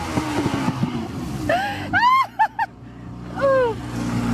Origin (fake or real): real